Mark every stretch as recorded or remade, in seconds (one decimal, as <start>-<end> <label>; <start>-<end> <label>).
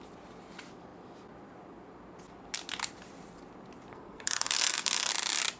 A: 0.0-3.9 recorded; 3.9-5.1 remade; 5.1-5.6 recorded